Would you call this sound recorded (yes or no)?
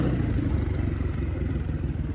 yes